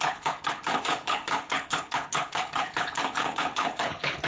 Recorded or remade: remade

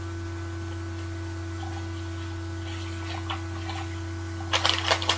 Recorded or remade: recorded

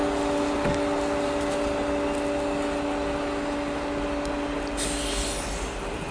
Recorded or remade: recorded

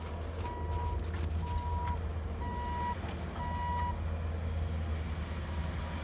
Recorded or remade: recorded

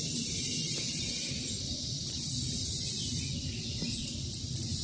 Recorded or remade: recorded